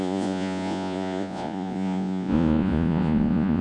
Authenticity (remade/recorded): remade